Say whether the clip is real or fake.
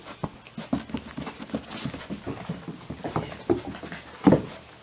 real